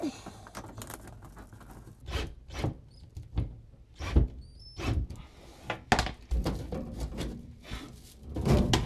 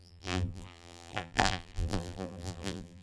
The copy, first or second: second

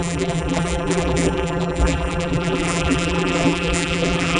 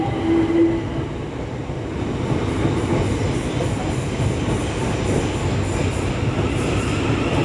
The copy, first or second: first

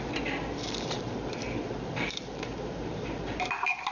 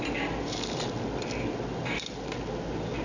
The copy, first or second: first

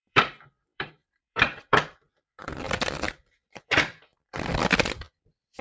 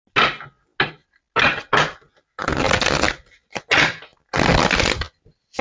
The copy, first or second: first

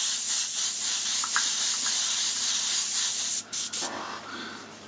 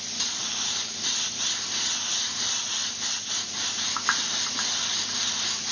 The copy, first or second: first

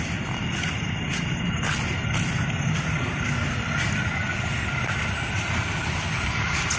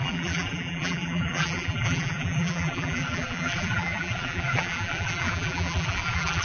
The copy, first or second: second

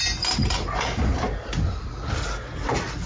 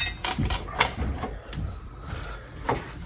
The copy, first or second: second